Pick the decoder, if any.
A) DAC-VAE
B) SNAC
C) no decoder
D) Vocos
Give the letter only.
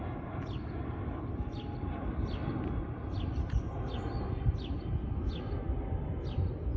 C